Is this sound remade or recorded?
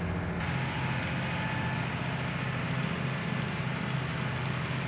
recorded